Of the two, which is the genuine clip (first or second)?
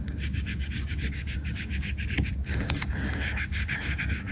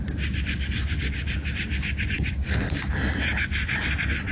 second